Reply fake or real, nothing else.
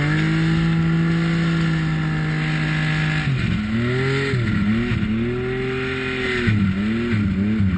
real